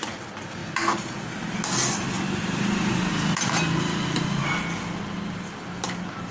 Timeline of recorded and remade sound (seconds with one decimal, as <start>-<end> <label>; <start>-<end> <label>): 0.0-6.3 recorded